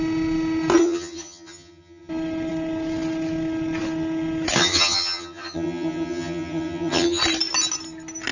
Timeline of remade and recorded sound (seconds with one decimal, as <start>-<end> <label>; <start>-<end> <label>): 0.0-0.8 recorded; 0.8-2.1 remade; 2.1-4.6 recorded; 4.6-7.2 remade; 7.2-8.3 recorded